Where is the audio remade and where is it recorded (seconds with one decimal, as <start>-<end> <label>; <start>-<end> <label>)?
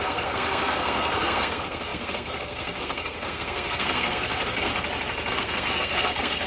0.0-4.7 remade; 4.7-5.3 recorded; 5.3-6.5 remade